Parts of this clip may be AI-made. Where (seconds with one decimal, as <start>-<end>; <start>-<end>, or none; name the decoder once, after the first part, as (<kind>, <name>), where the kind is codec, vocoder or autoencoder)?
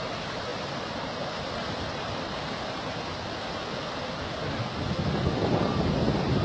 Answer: 0.0-3.1 (vocoder, BigVGAN v2); 5.5-6.4